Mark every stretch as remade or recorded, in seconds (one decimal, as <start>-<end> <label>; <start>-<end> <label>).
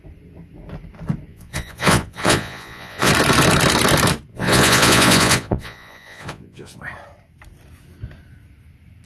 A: 0.0-1.3 recorded; 1.3-3.1 remade; 3.1-4.3 recorded; 4.3-6.8 remade; 6.8-9.1 recorded